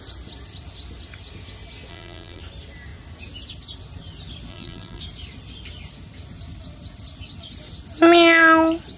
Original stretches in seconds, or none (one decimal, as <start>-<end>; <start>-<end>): 0.0-1.9; 2.4-4.5; 5.0-9.0